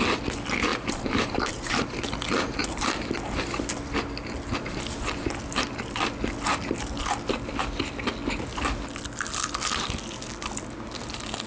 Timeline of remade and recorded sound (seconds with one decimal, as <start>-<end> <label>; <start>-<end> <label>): 0.0-0.7 recorded; 0.7-1.8 remade; 1.8-11.5 recorded